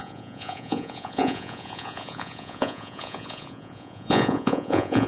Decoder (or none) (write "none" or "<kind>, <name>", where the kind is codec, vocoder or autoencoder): vocoder, Vocos